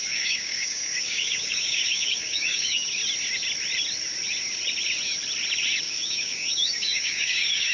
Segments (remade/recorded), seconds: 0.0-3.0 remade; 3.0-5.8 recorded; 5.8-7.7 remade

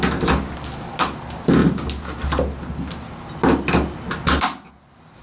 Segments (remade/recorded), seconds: 0.0-5.2 recorded

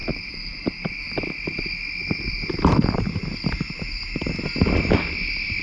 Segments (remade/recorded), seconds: 0.0-5.6 recorded

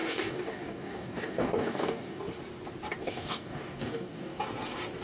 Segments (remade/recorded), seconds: 0.0-2.2 remade; 2.2-3.0 recorded; 3.0-4.4 remade; 4.4-5.0 recorded

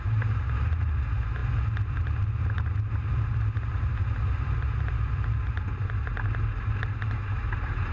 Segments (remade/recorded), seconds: 0.0-7.9 recorded